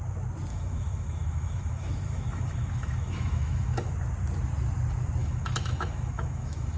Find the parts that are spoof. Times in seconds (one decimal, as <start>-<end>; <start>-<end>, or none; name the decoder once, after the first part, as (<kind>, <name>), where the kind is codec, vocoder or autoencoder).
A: 0.5-3.9 (autoencoder, DAC-VAE); 5.2-6.8